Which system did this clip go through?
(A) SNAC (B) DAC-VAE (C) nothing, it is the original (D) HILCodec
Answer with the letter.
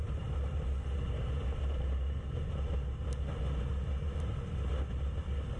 C